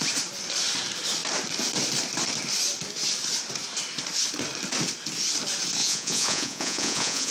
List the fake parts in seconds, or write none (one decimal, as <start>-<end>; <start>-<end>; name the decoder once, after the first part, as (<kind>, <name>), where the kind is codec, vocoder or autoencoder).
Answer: 5.8-7.3 (vocoder, Vocos)